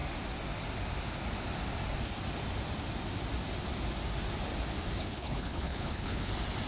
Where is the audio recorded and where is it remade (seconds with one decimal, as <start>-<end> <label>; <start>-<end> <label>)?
0.0-5.0 recorded; 5.0-6.3 remade; 6.3-6.7 recorded